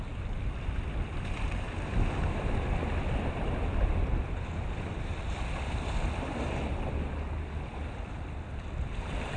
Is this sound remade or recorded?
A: recorded